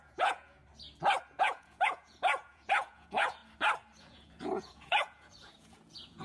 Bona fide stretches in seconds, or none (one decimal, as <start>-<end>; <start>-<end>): 0.6-1.4; 3.4-4.0